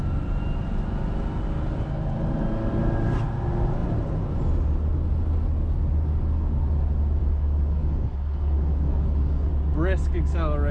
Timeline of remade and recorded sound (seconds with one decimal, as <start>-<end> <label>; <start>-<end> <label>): 0.0-7.2 recorded; 7.2-9.5 remade; 9.5-10.7 recorded